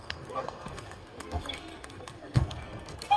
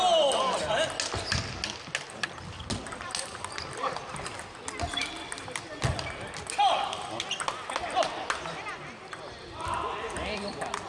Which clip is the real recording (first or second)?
second